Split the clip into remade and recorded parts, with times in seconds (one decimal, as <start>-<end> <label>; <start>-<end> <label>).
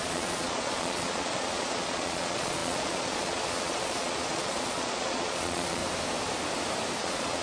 0.0-5.8 remade; 5.8-7.0 recorded; 7.0-7.4 remade